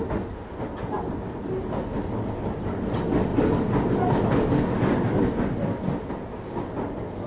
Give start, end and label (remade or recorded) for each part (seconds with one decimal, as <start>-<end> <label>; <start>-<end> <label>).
0.0-7.3 recorded